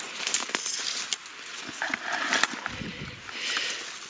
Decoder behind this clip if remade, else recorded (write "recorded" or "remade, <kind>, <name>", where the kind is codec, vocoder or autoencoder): recorded